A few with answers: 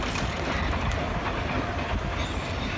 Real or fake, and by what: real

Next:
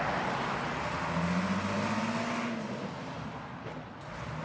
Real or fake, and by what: real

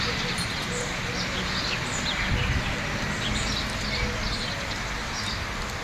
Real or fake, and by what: real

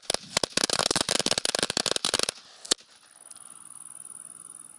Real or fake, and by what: real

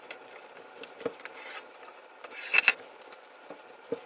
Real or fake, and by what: fake, vocoder, BigVGAN v2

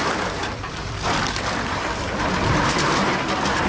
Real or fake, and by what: fake, vocoder, BigVGAN v2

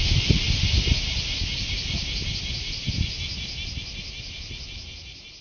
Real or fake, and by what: real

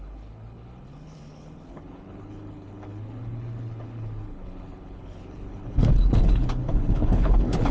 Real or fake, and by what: fake, codec, HILCodec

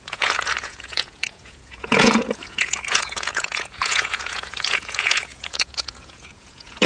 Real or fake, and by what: fake, vocoder, Vocos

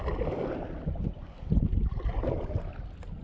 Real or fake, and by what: real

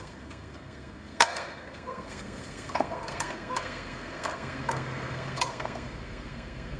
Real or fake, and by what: fake, codec, SNAC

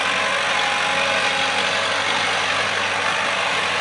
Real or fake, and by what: real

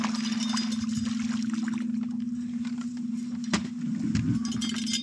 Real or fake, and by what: real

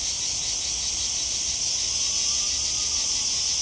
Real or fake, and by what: real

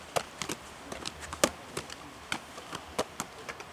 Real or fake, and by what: real